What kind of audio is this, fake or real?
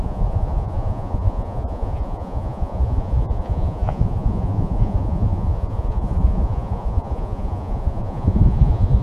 fake